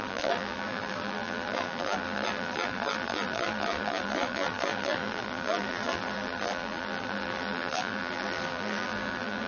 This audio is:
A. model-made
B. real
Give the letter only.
A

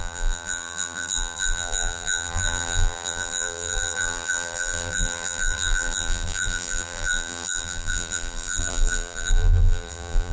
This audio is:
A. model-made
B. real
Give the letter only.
A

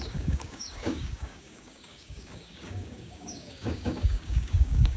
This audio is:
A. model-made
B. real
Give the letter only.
A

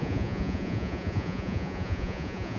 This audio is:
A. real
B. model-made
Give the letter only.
B